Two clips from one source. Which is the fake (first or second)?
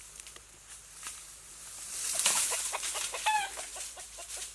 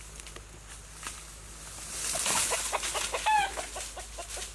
first